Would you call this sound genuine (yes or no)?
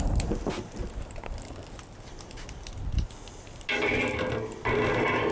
yes